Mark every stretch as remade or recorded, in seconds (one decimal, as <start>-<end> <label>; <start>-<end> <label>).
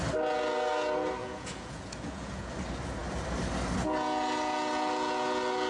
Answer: 0.0-1.2 recorded; 1.2-2.5 remade; 2.5-5.7 recorded